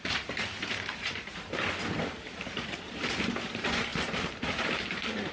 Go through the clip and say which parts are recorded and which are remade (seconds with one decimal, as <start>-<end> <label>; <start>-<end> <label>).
0.0-5.3 remade